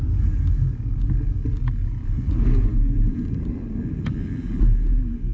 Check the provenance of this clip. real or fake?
real